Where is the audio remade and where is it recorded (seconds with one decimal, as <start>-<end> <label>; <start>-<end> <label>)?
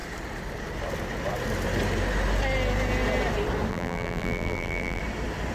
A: 0.0-3.7 recorded; 3.7-5.0 remade; 5.0-5.5 recorded